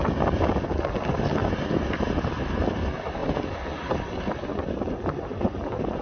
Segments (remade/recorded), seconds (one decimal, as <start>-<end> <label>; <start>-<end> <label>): 0.0-6.0 recorded